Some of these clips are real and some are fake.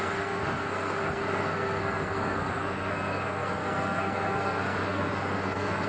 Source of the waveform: fake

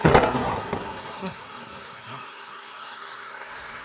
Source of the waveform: fake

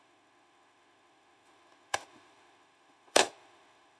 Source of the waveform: fake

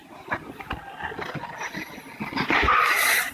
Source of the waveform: real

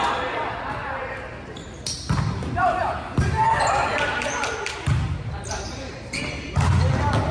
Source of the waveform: fake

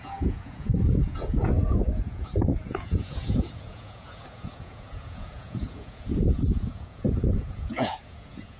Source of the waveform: fake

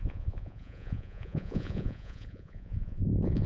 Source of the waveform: fake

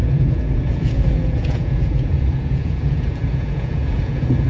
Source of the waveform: fake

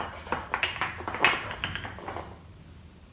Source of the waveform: real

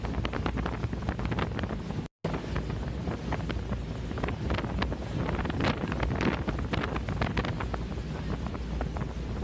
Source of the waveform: real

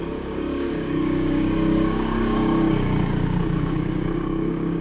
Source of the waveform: fake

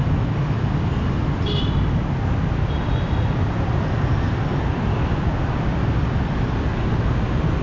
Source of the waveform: real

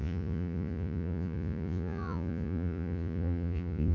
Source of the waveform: fake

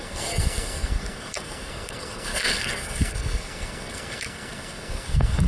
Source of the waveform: fake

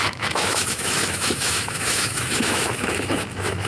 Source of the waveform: fake